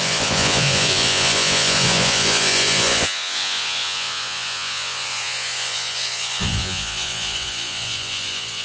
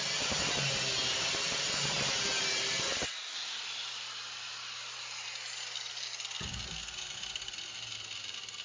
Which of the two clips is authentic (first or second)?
second